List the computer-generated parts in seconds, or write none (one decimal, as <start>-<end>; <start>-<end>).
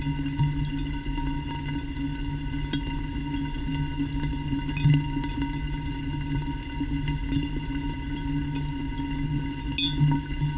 none